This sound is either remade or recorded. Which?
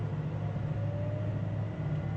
recorded